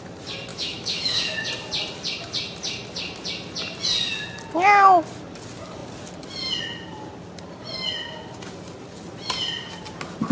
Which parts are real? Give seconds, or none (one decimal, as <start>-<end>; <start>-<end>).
0.0-0.5; 1.5-10.3